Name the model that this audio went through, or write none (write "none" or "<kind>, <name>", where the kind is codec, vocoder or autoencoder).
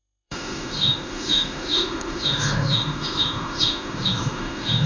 autoencoder, DAC-VAE